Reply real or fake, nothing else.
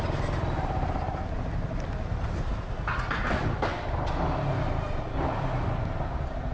real